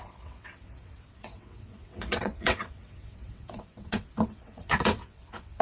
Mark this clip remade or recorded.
remade